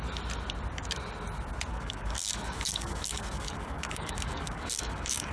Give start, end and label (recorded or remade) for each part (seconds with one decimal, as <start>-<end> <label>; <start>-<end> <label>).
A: 0.0-1.7 recorded; 1.7-5.3 remade